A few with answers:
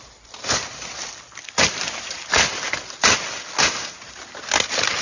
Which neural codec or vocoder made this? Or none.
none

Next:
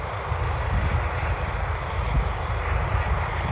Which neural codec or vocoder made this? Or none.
none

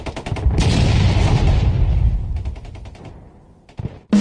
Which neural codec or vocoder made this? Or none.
none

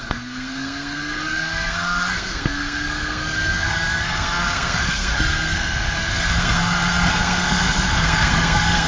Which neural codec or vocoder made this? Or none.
codec, SNAC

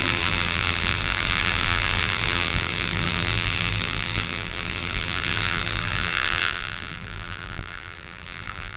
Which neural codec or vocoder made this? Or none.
vocoder, BigVGAN v2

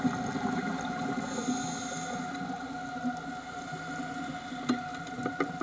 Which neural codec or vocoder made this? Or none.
none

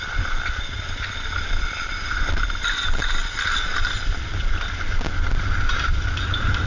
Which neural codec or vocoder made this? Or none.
vocoder, BigVGAN v2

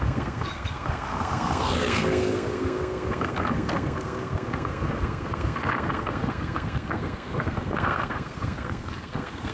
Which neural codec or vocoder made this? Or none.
codec, SNAC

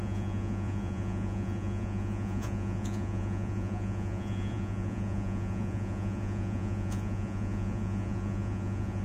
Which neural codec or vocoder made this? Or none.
vocoder, Vocos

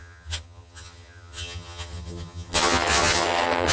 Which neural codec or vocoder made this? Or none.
vocoder, HiFi-GAN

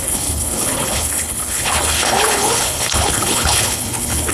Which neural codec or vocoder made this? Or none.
codec, HILCodec